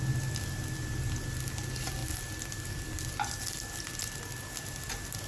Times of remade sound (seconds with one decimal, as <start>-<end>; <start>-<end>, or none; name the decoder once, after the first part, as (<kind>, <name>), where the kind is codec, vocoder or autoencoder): none